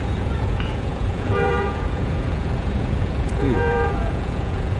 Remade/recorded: remade